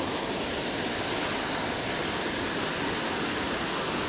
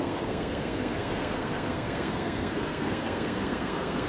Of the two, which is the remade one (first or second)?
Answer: second